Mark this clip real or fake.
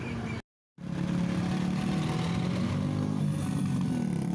real